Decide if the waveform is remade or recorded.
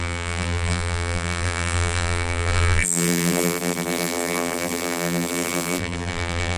remade